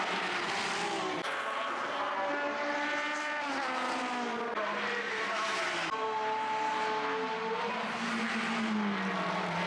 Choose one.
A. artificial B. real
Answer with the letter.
B